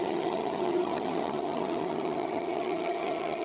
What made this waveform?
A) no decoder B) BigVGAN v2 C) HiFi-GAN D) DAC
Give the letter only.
C